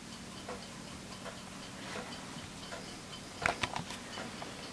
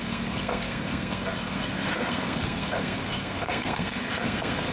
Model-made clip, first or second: second